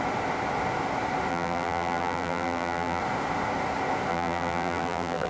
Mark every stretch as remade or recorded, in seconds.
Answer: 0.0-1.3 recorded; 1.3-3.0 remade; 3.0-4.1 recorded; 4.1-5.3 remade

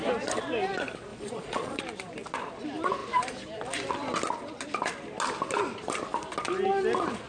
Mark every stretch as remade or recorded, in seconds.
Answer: 0.0-1.1 recorded; 1.1-1.8 remade; 1.8-7.3 recorded

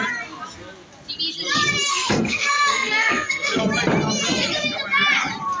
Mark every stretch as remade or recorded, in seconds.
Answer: 0.0-1.9 recorded; 1.9-3.6 remade; 3.6-5.6 recorded

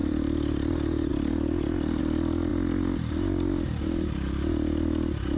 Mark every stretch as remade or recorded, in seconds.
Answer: 0.0-0.7 remade; 0.7-2.5 recorded; 2.5-5.4 remade

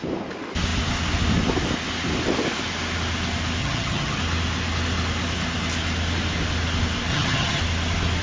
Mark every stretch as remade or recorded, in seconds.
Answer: 0.0-3.6 recorded; 3.6-4.2 remade; 4.2-7.1 recorded; 7.1-7.6 remade; 7.6-8.2 recorded

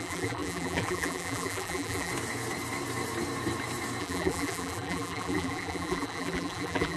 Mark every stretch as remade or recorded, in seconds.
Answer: 0.0-2.1 remade; 2.1-4.0 recorded; 4.0-7.0 remade

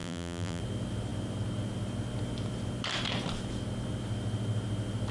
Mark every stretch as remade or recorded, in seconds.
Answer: 0.0-0.6 remade; 0.6-5.1 recorded